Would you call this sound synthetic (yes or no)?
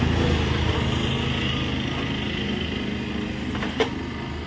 no